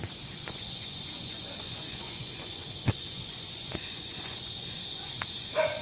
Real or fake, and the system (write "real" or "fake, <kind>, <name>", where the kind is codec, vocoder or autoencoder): fake, vocoder, Vocos